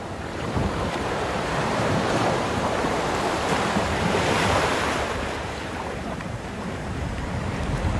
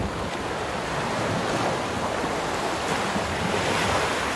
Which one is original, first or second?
second